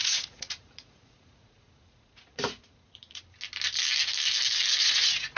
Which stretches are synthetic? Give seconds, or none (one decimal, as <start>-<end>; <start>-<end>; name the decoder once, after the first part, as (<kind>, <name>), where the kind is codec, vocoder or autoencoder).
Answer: 0.0-3.2 (vocoder, Vocos); 4.8-5.4